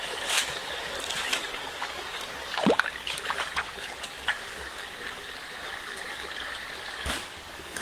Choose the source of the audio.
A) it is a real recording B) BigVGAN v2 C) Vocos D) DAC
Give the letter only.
D